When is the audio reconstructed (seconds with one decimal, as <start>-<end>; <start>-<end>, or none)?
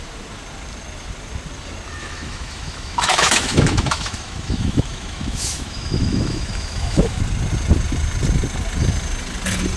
2.0-7.2